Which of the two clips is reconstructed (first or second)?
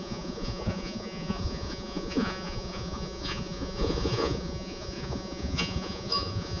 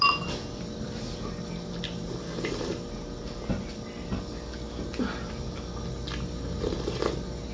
first